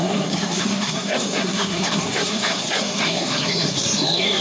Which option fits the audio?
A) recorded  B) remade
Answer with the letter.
B